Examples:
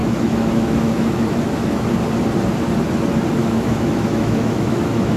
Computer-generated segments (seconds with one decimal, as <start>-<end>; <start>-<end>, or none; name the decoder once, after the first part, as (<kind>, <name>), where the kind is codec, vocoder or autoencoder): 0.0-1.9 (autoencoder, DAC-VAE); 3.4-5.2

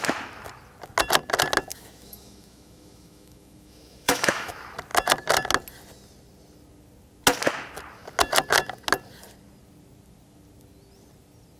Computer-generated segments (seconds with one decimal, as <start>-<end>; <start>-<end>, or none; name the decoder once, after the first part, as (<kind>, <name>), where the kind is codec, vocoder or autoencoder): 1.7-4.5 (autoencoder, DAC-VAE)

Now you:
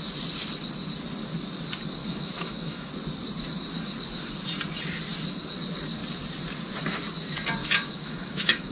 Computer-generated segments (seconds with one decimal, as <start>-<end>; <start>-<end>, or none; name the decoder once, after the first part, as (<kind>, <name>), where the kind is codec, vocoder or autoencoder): 2.0-2.9 (autoencoder, DAC-VAE); 7.6-8.7

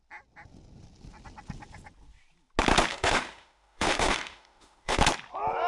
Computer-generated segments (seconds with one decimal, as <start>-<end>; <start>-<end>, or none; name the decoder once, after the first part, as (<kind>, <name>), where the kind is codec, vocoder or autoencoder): 2.9-5.0 (autoencoder, DAC-VAE)